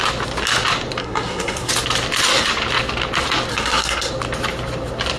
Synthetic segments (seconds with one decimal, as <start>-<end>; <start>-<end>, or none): 1.0-1.7; 3.5-4.1